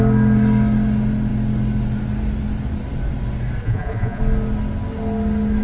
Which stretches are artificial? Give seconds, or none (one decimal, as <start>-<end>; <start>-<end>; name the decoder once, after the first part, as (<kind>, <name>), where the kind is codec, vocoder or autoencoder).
3.6-4.2 (vocoder, Vocos)